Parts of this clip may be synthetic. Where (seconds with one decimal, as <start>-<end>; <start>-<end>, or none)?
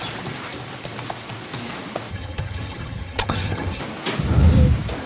2.1-3.8